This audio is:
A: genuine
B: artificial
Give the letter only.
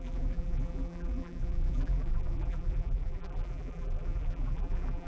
B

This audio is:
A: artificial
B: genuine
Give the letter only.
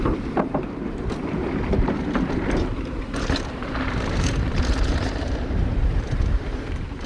A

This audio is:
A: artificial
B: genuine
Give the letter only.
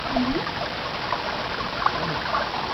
A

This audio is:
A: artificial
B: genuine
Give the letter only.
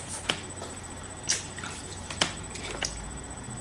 A